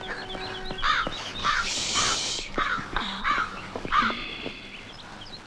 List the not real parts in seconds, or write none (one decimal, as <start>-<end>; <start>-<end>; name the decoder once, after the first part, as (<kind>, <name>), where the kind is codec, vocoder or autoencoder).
1.4-4.0 (codec, DAC)